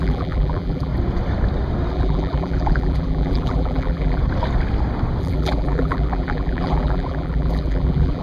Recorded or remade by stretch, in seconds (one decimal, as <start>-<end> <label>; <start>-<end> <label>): 0.0-0.9 remade; 0.9-1.9 recorded; 1.9-4.2 remade; 4.2-5.2 recorded; 5.2-8.2 remade